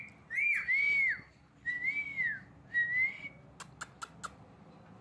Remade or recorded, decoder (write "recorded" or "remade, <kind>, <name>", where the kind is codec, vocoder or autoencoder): recorded